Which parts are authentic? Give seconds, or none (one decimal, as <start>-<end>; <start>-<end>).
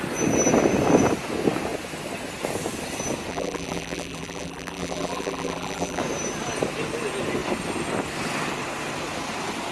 0.0-3.3; 6.0-9.7